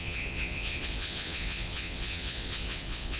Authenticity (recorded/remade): remade